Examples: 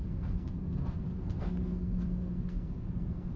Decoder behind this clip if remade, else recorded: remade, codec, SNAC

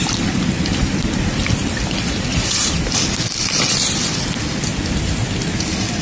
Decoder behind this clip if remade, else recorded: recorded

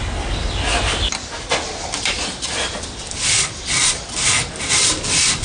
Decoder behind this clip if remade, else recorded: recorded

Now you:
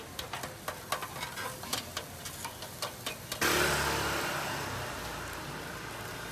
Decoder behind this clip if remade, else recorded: recorded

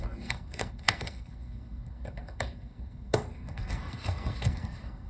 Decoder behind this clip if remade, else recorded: remade, codec, SNAC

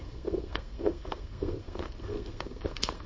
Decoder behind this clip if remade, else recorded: remade, codec, SNAC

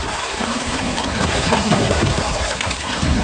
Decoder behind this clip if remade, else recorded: remade, codec, SNAC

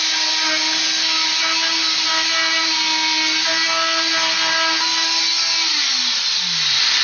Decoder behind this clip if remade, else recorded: recorded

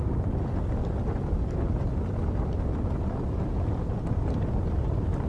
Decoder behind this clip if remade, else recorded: recorded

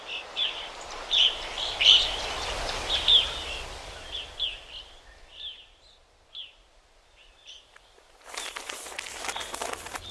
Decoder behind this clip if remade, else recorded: recorded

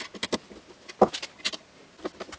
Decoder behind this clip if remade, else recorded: recorded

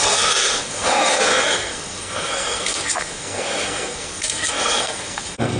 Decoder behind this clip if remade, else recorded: remade, codec, SNAC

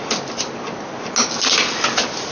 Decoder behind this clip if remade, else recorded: recorded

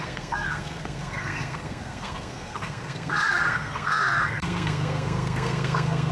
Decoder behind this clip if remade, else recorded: remade, codec, SNAC